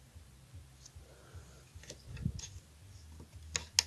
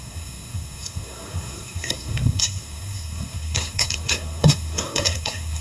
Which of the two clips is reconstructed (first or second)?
second